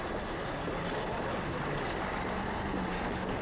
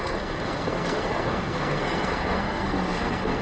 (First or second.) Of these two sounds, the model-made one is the second